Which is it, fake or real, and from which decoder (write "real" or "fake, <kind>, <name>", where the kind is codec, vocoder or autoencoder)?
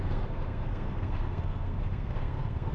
fake, codec, SNAC